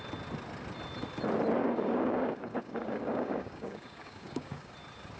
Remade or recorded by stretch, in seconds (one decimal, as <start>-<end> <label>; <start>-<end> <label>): 0.0-1.6 recorded; 1.6-4.7 remade; 4.7-5.2 recorded